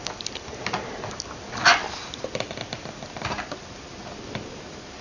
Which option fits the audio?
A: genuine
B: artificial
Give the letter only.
A